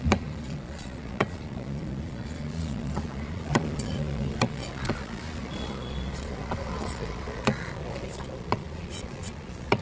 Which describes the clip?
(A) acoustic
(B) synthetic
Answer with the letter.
B